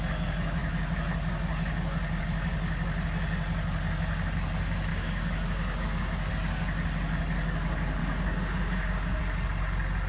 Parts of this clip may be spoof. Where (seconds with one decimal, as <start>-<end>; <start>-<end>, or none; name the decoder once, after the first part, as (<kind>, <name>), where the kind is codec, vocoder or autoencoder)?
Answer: 4.9-6.3 (codec, DAC); 8.0-9.2